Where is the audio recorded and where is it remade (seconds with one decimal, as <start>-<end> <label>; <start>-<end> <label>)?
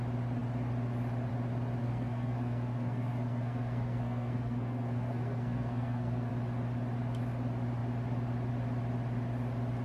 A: 0.0-1.8 recorded; 1.8-6.3 remade; 6.3-9.8 recorded